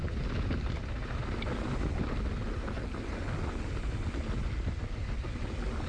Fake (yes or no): no